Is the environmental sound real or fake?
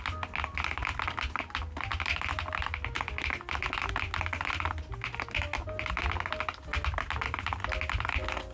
real